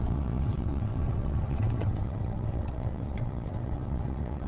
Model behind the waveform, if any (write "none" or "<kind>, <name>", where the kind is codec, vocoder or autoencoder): vocoder, WaveNeXt